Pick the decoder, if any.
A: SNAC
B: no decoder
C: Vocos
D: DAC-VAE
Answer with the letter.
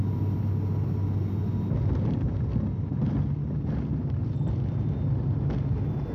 B